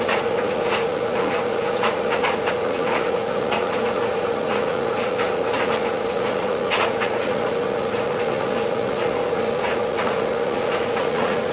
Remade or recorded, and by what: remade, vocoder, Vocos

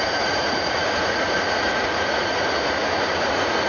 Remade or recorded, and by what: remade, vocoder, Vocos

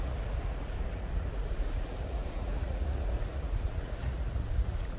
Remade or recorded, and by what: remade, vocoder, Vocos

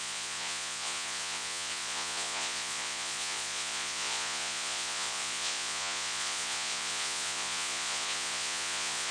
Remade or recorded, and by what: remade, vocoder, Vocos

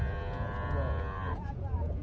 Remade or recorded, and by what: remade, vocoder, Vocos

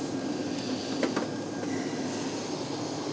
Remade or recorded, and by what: recorded